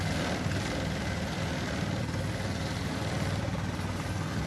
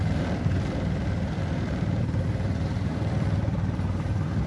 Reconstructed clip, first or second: second